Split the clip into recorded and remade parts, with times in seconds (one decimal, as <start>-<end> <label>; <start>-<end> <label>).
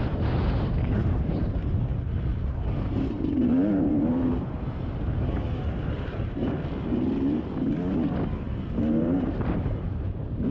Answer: 0.0-1.9 remade; 1.9-2.4 recorded; 2.4-6.4 remade; 6.4-8.8 recorded; 8.8-10.5 remade